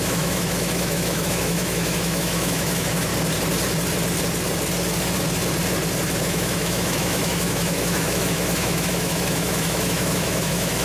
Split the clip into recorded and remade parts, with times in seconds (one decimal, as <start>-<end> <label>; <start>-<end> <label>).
0.0-3.1 remade; 3.1-6.3 recorded; 6.3-10.8 remade